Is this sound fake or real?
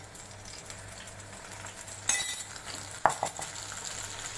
real